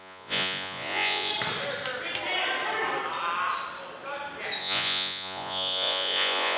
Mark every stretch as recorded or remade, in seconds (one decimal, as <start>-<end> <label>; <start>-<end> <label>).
0.0-1.3 remade; 1.3-4.6 recorded; 4.6-6.6 remade

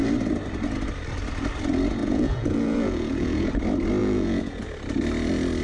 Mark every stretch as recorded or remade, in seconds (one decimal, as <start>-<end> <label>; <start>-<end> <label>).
0.0-2.0 recorded; 2.0-3.5 remade; 3.5-4.0 recorded; 4.0-4.6 remade; 4.6-5.6 recorded